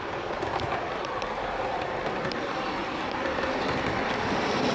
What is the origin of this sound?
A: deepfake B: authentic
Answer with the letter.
A